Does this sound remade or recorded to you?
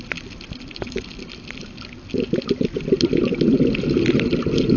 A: recorded